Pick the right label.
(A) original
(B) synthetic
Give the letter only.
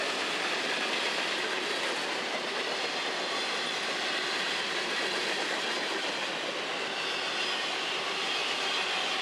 A